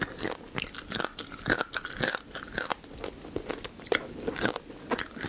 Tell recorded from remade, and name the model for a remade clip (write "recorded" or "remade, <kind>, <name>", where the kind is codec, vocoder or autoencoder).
recorded